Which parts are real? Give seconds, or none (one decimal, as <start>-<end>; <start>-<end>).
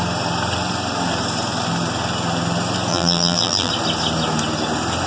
0.0-2.9; 3.7-5.1